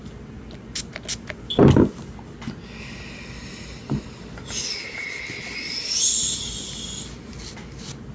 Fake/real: real